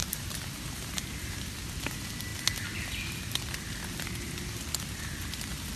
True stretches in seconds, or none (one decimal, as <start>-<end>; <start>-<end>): 1.5-5.8